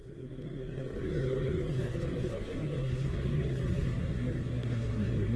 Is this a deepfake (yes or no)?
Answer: yes